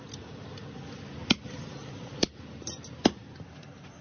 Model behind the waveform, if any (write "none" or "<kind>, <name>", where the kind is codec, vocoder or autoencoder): none